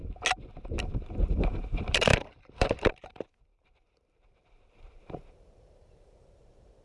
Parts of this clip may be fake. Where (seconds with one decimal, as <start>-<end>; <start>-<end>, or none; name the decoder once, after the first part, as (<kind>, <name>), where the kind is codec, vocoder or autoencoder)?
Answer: 0.9-6.8 (vocoder, BigVGAN v2)